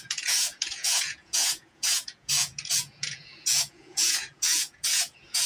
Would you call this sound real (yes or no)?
no